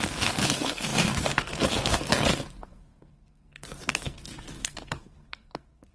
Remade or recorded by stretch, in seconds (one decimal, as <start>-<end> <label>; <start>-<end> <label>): 0.0-5.9 remade